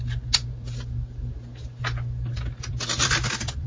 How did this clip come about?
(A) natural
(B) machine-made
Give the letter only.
A